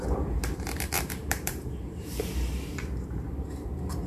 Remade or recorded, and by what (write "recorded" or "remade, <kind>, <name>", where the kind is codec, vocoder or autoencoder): remade, vocoder, BigVGAN v2